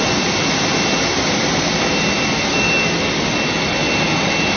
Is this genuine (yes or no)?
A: yes